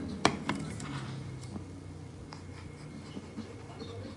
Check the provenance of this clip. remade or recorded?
recorded